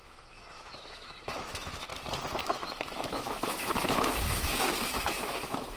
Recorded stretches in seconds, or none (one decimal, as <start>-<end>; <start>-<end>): 1.9-2.4

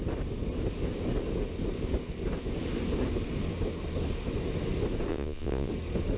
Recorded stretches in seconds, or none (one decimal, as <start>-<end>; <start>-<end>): 0.0-5.1; 5.7-6.2

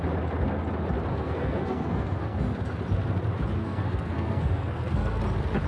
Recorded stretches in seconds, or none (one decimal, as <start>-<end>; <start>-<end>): 0.0-1.1; 2.4-3.6; 5.2-5.7